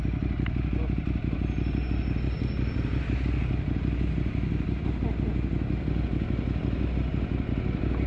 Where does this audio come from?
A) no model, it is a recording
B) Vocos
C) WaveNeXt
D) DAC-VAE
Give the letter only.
A